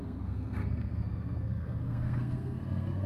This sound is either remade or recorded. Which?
remade